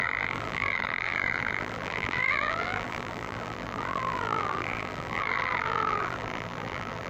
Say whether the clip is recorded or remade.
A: remade